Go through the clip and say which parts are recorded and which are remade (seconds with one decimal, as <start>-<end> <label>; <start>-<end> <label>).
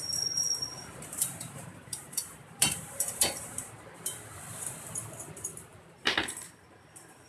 0.0-0.8 recorded; 0.8-3.6 remade; 3.6-5.7 recorded; 5.7-7.3 remade